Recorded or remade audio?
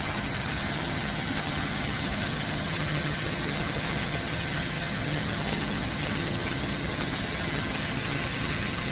remade